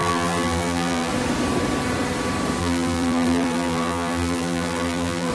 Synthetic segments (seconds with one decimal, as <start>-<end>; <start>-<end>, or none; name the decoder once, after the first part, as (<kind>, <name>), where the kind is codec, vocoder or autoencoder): 0.0-1.1 (vocoder, BigVGAN v2); 2.6-5.3